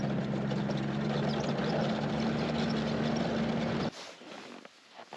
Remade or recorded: recorded